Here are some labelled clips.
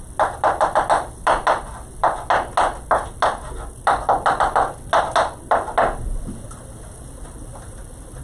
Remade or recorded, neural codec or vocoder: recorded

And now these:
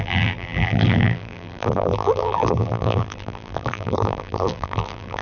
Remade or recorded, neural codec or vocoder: remade, vocoder, BigVGAN v2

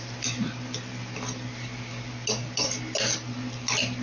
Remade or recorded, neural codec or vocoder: recorded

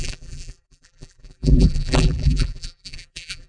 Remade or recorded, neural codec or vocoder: remade, vocoder, BigVGAN v2